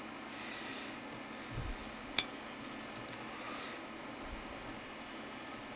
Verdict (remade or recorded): recorded